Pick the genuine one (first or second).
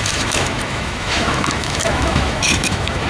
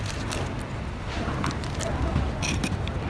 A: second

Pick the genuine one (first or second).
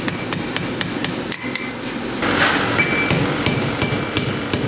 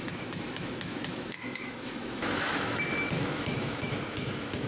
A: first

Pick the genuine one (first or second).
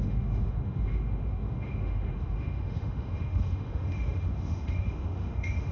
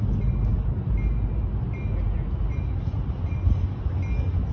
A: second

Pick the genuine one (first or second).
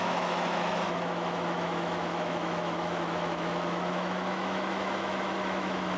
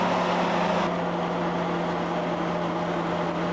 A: second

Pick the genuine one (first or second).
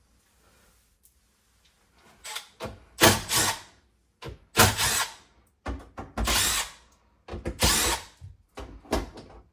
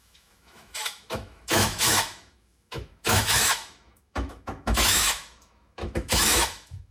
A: first